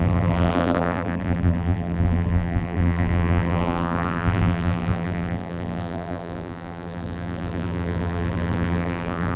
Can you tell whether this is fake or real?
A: fake